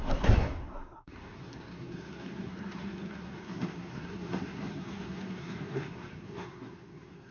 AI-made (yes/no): yes